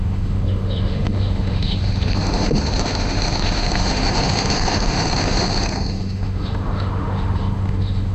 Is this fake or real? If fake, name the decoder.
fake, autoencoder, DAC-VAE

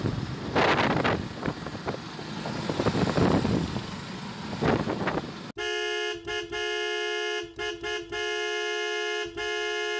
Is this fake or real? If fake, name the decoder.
real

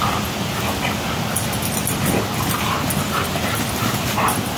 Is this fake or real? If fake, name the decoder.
real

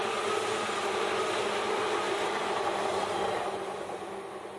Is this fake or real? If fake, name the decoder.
real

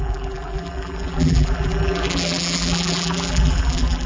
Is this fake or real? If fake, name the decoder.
fake, vocoder, BigVGAN v2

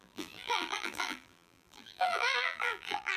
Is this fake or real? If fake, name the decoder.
fake, vocoder, BigVGAN v2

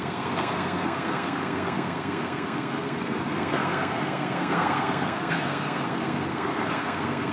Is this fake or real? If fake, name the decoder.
fake, codec, SNAC